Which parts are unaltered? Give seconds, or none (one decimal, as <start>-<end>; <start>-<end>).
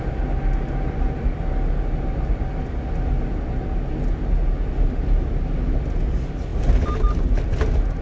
0.0-8.0